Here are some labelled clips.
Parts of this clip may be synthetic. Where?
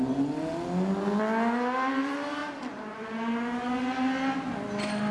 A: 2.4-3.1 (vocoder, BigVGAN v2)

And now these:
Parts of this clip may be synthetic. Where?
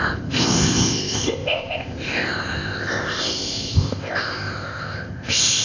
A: 0.0-5.6 (codec, ZipCodec)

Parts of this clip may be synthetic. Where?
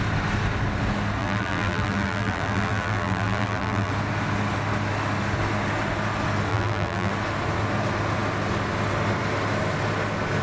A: 1.2-3.9 (vocoder, BigVGAN v2); 6.5-7.1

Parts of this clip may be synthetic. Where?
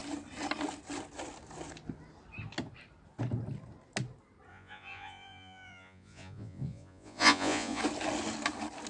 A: 4.5-7.8 (vocoder, Vocos)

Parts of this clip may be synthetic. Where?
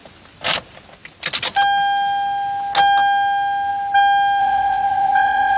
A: 4.4-5.6 (vocoder, WaveNeXt)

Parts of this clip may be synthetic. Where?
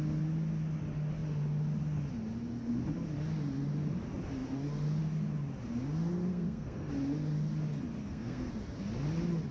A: 6.3-6.9 (codec, SNAC); 8.0-8.5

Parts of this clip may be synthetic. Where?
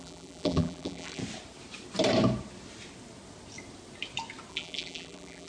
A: 0.0-1.2 (vocoder, BigVGAN v2); 4.5-5.5